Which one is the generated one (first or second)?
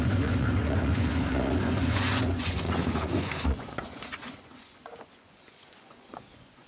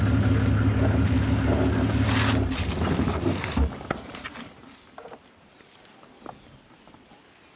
first